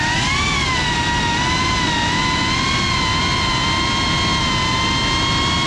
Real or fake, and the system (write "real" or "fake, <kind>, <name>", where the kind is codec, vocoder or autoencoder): real